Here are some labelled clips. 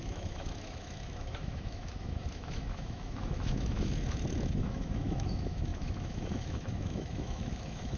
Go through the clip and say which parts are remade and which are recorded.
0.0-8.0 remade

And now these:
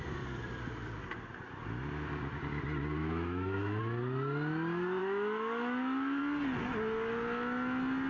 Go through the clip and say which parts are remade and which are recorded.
0.0-3.0 recorded; 3.0-3.8 remade; 3.8-5.0 recorded; 5.0-6.2 remade; 6.2-8.1 recorded

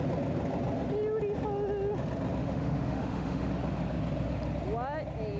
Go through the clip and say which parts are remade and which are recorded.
0.0-2.4 recorded; 2.4-3.5 remade; 3.5-5.4 recorded

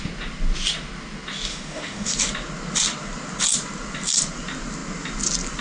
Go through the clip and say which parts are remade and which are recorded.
0.0-1.5 recorded; 1.5-2.1 remade; 2.1-5.6 recorded

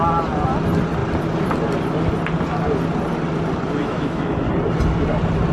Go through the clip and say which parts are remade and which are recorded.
0.0-3.8 recorded; 3.8-4.5 remade; 4.5-5.5 recorded

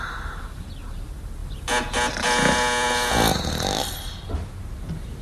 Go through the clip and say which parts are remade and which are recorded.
0.0-5.2 recorded